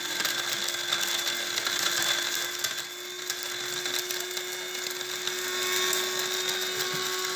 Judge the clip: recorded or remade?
recorded